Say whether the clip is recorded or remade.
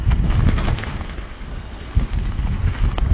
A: remade